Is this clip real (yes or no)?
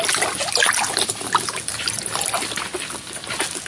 yes